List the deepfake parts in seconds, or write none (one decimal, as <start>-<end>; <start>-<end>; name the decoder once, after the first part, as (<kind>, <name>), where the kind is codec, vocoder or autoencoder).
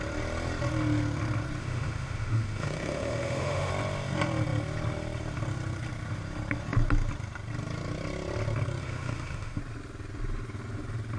1.6-3.7 (autoencoder, DAC-VAE); 8.8-9.6